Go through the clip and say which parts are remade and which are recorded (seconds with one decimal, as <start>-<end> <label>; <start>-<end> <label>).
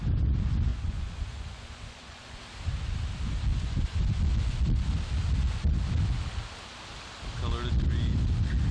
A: 0.0-0.7 recorded; 0.7-2.4 remade; 2.4-3.5 recorded; 3.5-4.2 remade; 4.2-8.7 recorded